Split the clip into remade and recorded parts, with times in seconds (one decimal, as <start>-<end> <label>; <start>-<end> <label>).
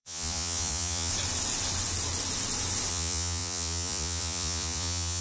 0.0-1.1 remade; 1.1-2.9 recorded; 2.9-5.2 remade